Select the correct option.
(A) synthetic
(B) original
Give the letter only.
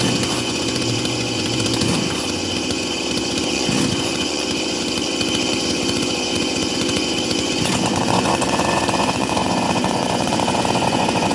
A